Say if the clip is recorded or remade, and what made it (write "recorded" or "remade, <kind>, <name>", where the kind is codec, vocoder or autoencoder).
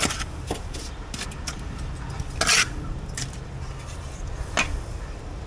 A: recorded